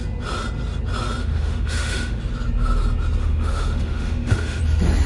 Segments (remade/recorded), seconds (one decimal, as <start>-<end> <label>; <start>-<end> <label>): 0.0-1.2 recorded; 1.2-2.2 remade; 2.2-3.2 recorded; 3.2-4.6 remade; 4.6-5.1 recorded